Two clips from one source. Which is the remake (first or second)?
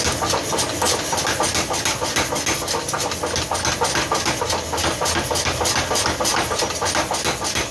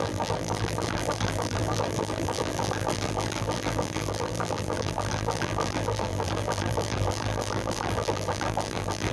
second